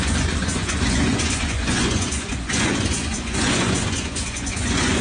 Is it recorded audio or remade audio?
remade